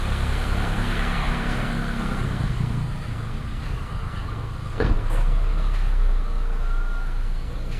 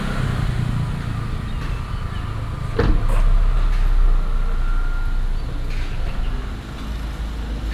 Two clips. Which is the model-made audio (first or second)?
first